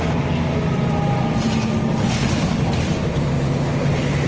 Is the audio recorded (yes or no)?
yes